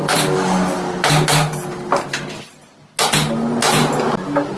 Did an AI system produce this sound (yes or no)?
no